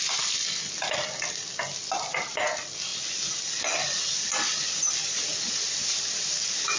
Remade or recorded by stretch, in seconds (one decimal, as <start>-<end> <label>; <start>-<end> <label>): 0.0-6.8 recorded